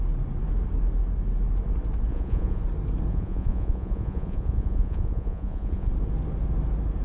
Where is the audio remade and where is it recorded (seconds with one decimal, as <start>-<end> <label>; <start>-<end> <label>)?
0.0-2.1 recorded; 2.1-2.6 remade; 2.6-3.1 recorded; 3.1-5.9 remade; 5.9-7.0 recorded